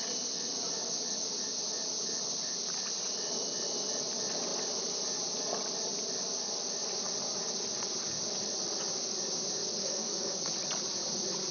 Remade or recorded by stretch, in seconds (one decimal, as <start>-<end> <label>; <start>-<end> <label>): 0.0-9.8 recorded; 9.8-10.5 remade; 10.5-11.5 recorded